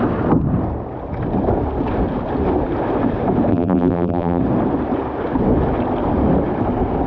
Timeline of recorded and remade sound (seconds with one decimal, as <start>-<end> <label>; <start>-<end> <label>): 0.0-3.5 recorded; 3.5-4.4 remade; 4.4-7.1 recorded